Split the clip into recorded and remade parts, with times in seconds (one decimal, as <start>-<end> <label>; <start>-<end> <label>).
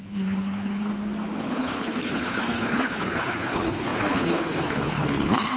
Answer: 0.0-0.9 remade; 0.9-1.4 recorded; 1.4-5.6 remade